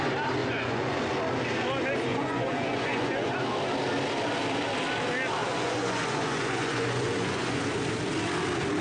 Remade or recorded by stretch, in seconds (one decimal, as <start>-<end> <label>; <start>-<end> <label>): 0.0-0.4 recorded; 0.4-1.0 remade; 1.0-2.1 recorded; 2.1-3.3 remade; 3.3-5.4 recorded; 5.4-7.6 remade; 7.6-8.8 recorded